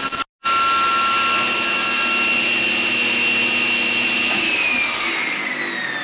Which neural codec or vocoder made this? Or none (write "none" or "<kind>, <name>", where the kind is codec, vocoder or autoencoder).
none